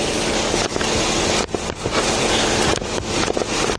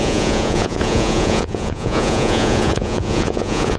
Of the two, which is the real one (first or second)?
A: first